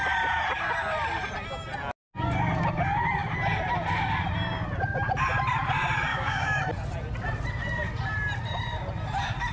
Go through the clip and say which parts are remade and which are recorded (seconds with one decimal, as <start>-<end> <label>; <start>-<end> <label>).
0.0-6.1 recorded; 6.1-6.6 remade; 6.6-9.5 recorded